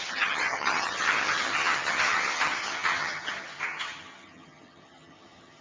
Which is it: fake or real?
fake